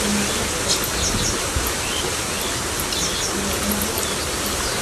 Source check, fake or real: real